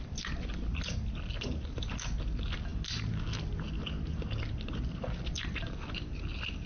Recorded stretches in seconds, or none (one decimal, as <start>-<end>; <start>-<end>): 0.0-6.7